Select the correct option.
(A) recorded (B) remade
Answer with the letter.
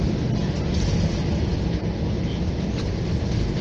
A